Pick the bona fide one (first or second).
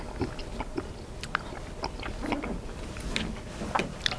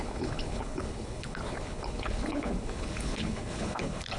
first